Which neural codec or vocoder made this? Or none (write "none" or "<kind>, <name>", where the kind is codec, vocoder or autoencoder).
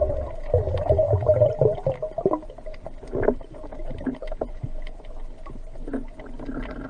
none